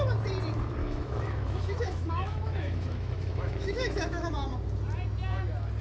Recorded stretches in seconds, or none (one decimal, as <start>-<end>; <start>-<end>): 0.0-0.8; 4.3-5.8